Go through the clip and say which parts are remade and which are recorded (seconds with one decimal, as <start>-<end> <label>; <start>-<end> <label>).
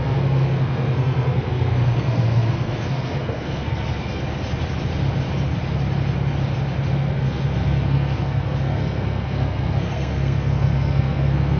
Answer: 0.0-4.2 remade; 4.2-6.9 recorded; 6.9-11.6 remade